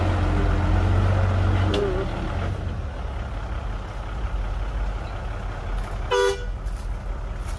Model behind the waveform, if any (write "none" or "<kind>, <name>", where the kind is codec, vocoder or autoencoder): none